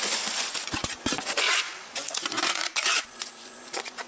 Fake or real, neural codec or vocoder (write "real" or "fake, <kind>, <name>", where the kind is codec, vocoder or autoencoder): fake, vocoder, Vocos